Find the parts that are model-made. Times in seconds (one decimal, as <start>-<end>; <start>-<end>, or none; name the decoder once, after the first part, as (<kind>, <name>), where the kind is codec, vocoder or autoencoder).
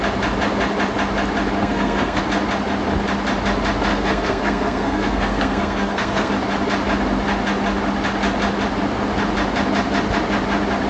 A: 1.6-2.2 (codec, SNAC); 3.9-6.3